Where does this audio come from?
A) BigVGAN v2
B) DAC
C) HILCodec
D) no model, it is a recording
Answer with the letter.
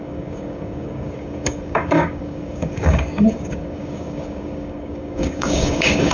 B